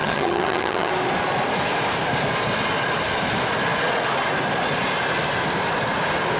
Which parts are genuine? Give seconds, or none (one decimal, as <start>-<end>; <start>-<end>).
0.9-6.4